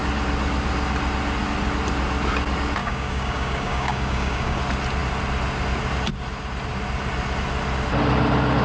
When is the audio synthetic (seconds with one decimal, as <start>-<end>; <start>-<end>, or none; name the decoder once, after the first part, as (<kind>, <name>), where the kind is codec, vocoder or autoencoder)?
2.8-4.6 (codec, DAC)